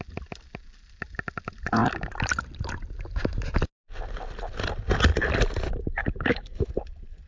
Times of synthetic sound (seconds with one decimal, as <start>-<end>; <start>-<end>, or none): 6.0-6.7